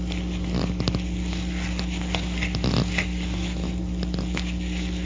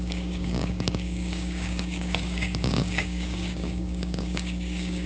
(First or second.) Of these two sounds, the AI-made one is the second